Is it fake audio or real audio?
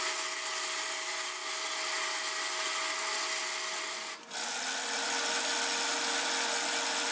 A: real